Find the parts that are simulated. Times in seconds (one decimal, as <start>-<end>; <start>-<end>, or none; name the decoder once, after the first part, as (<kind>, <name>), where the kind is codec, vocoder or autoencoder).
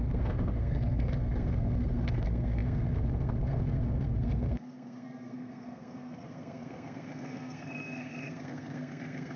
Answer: 0.0-9.4 (codec, SNAC)